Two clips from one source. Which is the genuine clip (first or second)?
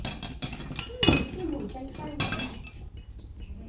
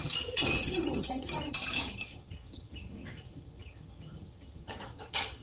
first